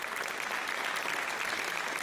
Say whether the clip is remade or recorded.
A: recorded